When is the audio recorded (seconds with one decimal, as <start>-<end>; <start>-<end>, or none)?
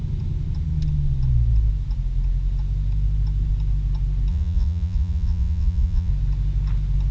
0.0-4.3; 6.1-7.1